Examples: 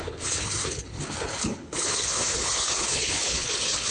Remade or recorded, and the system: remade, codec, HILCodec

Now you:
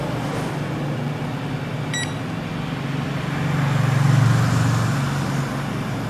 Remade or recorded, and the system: recorded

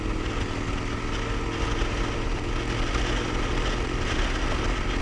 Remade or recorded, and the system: recorded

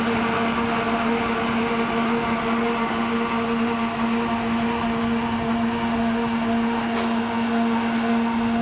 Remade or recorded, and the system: recorded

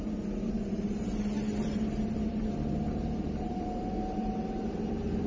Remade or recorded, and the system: remade, vocoder, BigVGAN v2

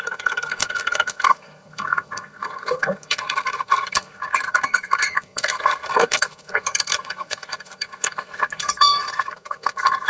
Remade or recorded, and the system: remade, codec, SNAC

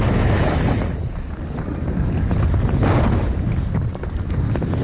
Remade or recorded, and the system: recorded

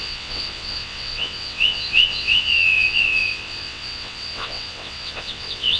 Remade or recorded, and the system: remade, vocoder, WaveNeXt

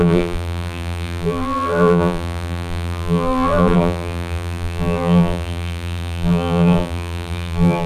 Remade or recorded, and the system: remade, vocoder, BigVGAN v2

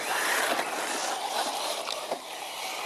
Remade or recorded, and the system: remade, vocoder, BigVGAN v2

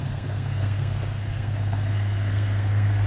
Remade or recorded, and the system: remade, codec, SNAC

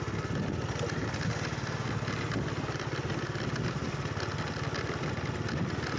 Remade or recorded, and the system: recorded